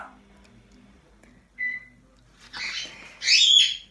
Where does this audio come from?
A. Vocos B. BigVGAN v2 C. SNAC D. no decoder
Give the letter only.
D